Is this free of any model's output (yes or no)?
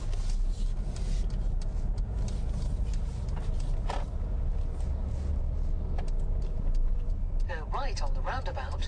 yes